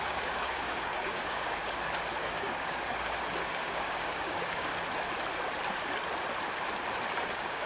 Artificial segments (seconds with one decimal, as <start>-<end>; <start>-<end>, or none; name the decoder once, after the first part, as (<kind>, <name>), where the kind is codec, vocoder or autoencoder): 0.0-1.6 (codec, DAC); 2.2-4.7; 7.3-7.7